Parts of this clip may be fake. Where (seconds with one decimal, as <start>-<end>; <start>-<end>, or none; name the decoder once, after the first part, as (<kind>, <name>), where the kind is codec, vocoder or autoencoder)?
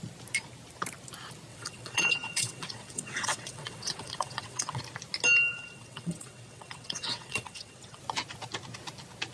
1.5-4.8 (vocoder, WaveNeXt); 5.5-8.0